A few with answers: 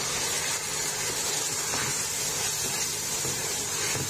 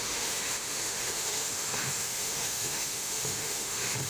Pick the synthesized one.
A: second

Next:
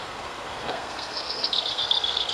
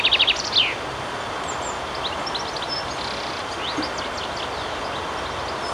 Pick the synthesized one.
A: first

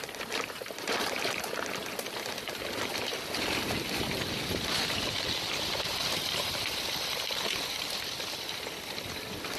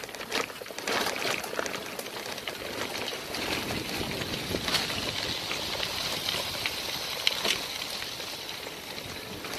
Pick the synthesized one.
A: first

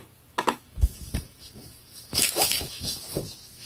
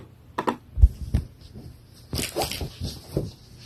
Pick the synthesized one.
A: first